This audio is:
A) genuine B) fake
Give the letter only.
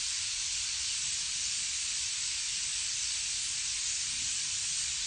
B